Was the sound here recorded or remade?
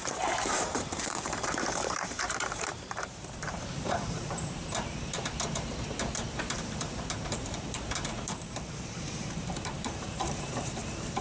remade